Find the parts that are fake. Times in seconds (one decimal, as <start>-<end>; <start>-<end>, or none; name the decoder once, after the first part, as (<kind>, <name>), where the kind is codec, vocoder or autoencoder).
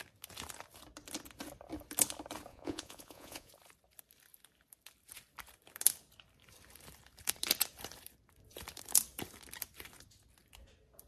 2.5-3.5 (vocoder, Vocos)